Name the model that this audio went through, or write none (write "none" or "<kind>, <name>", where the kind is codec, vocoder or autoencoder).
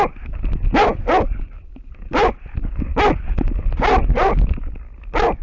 none